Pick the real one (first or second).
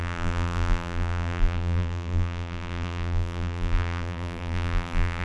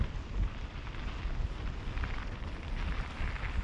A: second